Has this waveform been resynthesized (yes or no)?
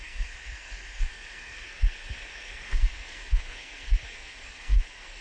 yes